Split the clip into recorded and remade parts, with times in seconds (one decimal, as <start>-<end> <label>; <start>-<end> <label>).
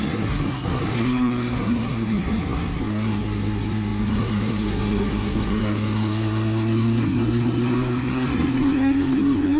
0.0-9.6 remade